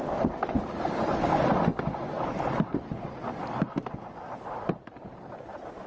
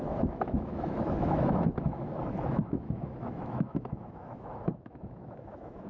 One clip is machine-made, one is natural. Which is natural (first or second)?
first